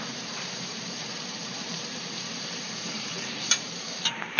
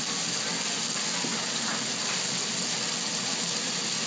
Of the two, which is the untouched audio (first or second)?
second